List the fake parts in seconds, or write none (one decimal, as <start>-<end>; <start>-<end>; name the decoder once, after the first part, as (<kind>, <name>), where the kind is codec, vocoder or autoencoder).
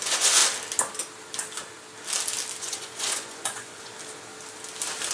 0.0-0.4 (vocoder, Vocos); 2.6-3.9